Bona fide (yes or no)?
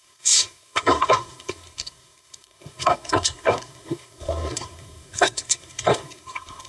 no